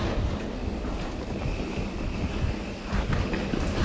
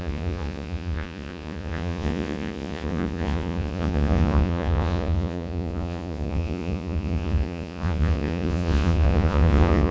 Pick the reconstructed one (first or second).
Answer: second